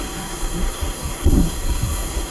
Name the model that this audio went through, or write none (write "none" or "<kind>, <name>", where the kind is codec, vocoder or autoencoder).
codec, SNAC